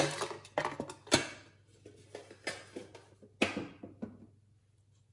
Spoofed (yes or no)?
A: no